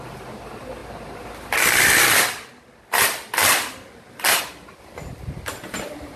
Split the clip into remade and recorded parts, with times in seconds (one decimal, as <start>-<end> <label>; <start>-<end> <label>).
0.0-6.2 recorded